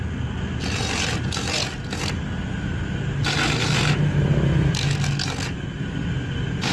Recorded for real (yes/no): yes